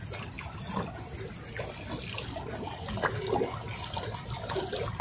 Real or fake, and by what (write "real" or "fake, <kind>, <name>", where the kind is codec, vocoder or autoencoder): real